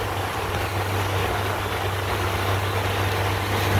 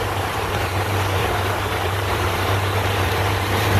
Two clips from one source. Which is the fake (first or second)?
second